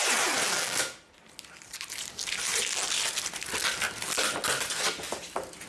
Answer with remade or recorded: recorded